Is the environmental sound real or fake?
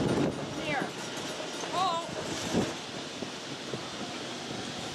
real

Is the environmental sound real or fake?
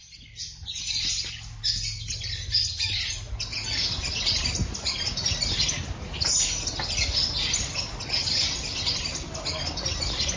real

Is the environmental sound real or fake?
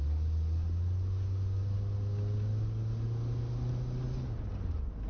real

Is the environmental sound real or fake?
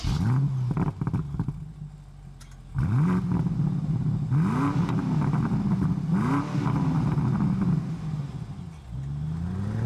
real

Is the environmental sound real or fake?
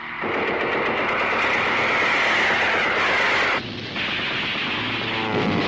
real